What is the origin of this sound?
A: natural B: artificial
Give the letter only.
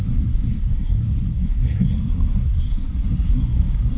B